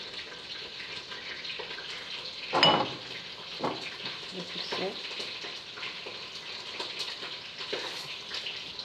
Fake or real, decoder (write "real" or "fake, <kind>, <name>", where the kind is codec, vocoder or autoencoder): real